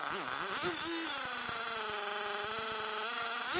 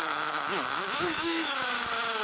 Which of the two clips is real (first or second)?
first